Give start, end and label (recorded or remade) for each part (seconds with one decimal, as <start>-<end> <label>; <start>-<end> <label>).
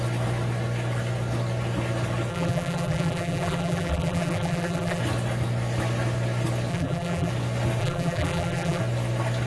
0.0-2.3 recorded; 2.3-5.0 remade; 5.0-6.7 recorded; 6.7-7.3 remade; 7.3-7.8 recorded; 7.8-8.8 remade; 8.8-9.5 recorded